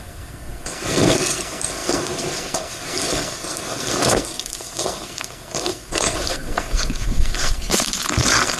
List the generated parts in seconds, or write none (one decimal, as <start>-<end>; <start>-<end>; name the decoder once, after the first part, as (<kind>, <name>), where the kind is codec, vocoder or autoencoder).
0.0-8.6 (codec, SNAC)